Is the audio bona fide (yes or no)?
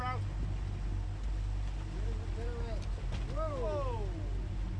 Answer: yes